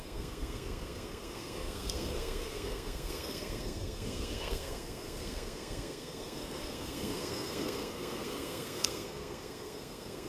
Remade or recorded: remade